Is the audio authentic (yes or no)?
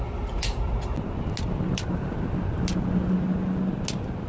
yes